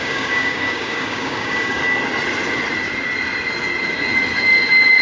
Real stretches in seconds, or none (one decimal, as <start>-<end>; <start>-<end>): 1.8-5.0